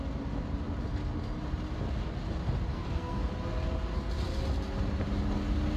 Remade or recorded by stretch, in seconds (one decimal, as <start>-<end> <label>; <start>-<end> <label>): 0.0-2.7 recorded; 2.7-3.3 remade; 3.3-5.8 recorded